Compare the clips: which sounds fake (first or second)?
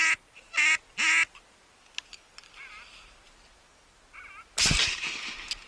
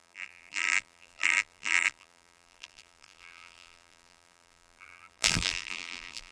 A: second